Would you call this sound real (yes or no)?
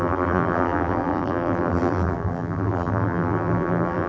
no